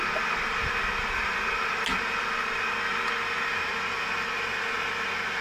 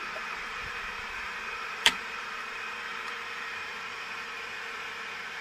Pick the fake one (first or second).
second